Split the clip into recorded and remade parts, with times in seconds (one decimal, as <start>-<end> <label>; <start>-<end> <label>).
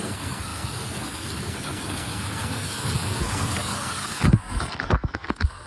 0.0-5.7 remade